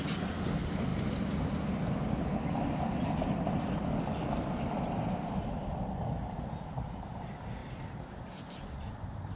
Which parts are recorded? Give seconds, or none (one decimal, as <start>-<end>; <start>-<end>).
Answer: 0.0-7.6